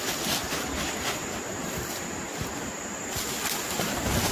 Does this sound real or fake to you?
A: real